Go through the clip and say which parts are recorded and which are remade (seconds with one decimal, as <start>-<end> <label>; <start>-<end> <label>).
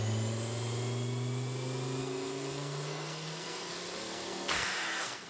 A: 0.0-2.0 recorded; 2.0-5.3 remade